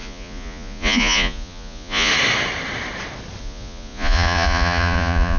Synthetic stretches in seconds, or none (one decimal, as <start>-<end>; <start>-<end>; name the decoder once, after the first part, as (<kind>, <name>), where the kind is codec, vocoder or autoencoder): 0.0-2.1 (vocoder, Vocos); 3.4-5.4